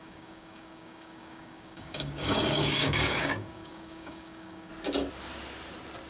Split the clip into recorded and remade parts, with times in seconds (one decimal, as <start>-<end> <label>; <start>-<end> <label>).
0.0-4.7 remade; 4.7-6.1 recorded